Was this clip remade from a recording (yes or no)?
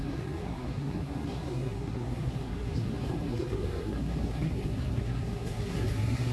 yes